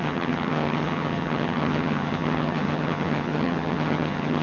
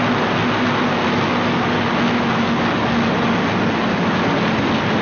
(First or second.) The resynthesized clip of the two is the first